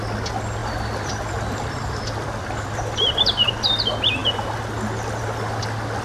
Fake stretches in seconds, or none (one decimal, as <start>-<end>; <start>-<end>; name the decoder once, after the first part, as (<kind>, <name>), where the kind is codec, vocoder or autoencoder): 0.6-3.5 (vocoder, BigVGAN v2)